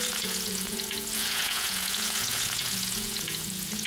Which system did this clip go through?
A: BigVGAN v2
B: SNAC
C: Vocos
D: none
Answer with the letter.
C